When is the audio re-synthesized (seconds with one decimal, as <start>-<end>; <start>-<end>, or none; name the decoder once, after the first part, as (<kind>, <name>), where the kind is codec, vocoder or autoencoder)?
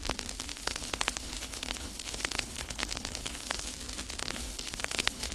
0.5-3.7 (codec, HILCodec); 4.2-5.3